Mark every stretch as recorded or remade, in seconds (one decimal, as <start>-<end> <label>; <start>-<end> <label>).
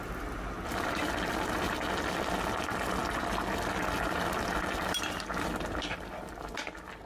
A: 0.0-7.1 recorded